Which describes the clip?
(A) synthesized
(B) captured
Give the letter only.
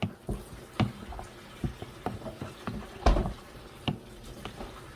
B